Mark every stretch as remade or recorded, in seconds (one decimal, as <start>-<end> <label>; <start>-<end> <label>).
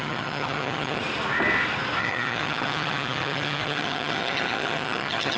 0.0-1.0 remade; 1.0-2.0 recorded; 2.0-5.4 remade